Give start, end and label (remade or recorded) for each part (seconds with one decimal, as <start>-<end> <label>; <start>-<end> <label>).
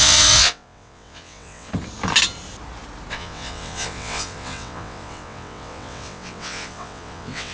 0.0-1.7 remade; 1.7-3.1 recorded; 3.1-7.5 remade